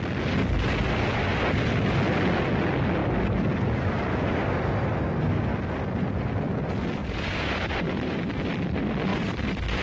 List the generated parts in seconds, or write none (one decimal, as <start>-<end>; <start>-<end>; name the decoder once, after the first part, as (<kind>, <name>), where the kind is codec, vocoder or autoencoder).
7.0-8.5 (vocoder, BigVGAN v2); 9.1-9.8